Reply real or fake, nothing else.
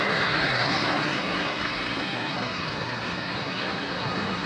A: fake